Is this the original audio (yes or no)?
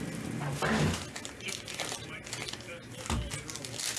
yes